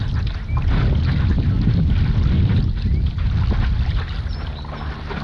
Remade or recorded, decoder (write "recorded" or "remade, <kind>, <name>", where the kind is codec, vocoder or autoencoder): recorded